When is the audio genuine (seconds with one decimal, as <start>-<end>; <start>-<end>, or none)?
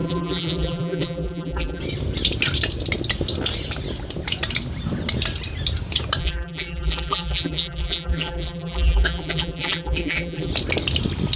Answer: 1.8-6.2; 10.5-11.4